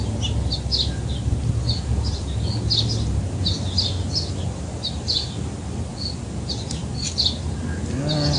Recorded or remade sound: recorded